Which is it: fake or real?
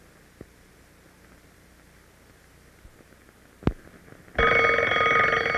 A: real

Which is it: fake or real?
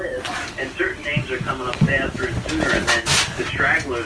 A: real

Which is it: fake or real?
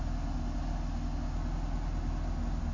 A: real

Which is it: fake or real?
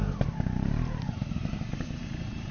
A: fake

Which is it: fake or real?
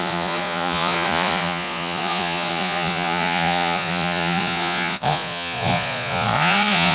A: fake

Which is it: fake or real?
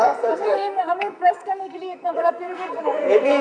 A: fake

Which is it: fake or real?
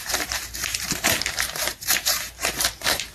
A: fake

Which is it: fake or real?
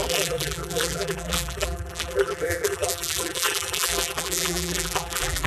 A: fake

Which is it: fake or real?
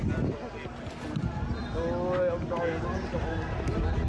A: real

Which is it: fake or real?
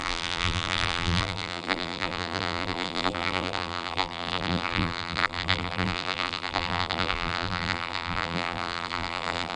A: fake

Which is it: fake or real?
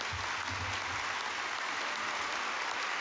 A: real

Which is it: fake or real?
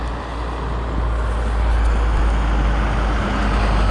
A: real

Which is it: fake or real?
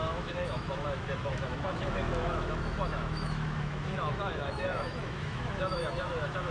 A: fake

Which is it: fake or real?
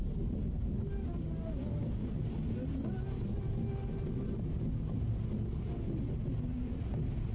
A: real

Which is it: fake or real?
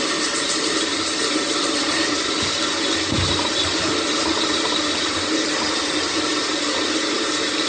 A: real